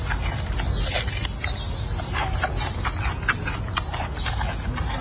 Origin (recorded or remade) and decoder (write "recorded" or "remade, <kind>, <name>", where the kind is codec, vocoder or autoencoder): recorded